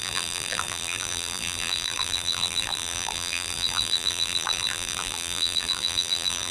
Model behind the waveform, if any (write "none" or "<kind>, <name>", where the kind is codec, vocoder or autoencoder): vocoder, BigVGAN v2